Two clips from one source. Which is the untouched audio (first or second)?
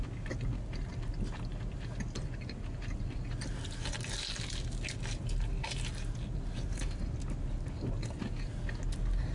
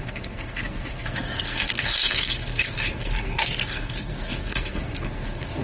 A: first